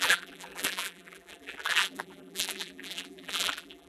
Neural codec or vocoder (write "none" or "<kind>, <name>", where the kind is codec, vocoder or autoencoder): vocoder, BigVGAN v2